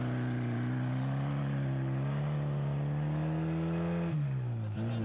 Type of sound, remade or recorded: recorded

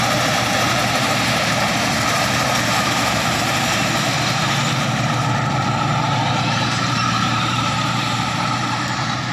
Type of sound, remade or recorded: remade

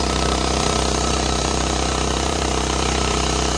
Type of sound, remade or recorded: remade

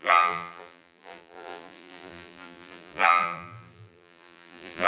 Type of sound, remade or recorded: remade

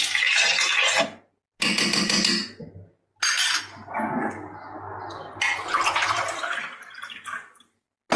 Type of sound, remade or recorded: recorded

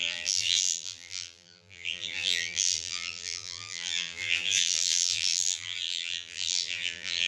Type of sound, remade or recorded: remade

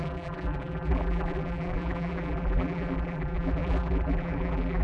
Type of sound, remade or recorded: remade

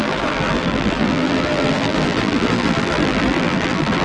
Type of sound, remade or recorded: remade